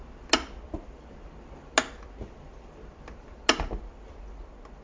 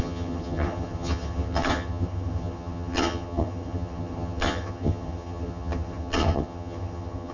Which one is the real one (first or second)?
first